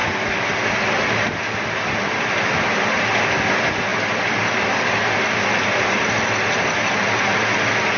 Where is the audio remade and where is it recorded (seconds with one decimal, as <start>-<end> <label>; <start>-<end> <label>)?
0.0-8.0 recorded